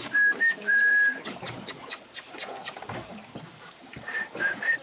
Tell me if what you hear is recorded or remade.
remade